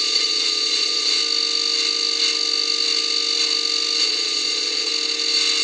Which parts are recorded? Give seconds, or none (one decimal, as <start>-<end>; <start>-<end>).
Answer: 1.2-4.0; 4.9-5.6